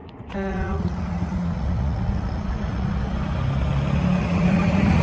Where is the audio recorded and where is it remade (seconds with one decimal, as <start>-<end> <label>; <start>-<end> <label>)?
0.0-3.0 remade; 3.0-4.2 recorded; 4.2-5.0 remade